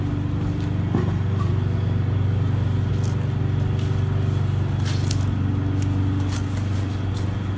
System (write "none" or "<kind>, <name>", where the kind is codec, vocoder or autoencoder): none